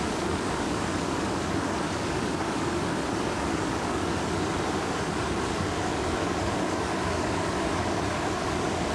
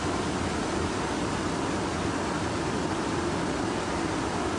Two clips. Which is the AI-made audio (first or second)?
first